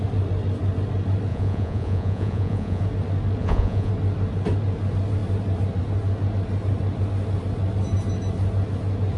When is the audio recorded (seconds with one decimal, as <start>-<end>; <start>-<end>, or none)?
0.0-1.3; 2.8-3.4; 3.9-9.2